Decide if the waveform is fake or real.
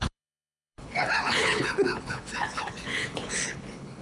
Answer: fake